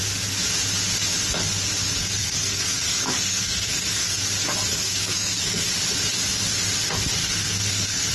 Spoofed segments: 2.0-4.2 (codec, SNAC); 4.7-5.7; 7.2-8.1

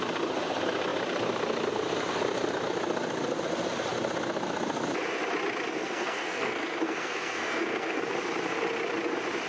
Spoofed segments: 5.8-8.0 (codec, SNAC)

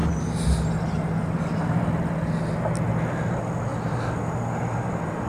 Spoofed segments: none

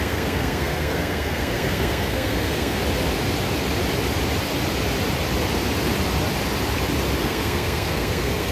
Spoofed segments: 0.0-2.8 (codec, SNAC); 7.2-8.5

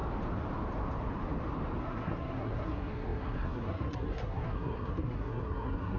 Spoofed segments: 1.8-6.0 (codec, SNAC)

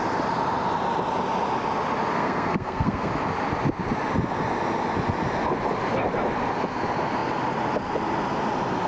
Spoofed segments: 2.1-3.1 (codec, SNAC)